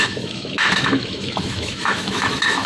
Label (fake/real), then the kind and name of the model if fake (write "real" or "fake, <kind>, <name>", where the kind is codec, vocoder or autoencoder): fake, autoencoder, DAC-VAE